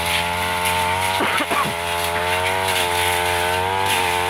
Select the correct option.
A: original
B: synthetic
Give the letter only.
A